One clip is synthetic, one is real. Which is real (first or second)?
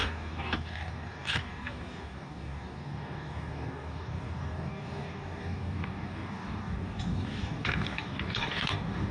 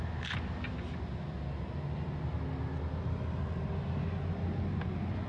second